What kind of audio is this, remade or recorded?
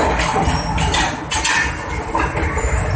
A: recorded